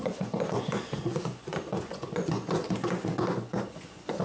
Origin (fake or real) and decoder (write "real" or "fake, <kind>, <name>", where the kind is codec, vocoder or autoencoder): fake, vocoder, Vocos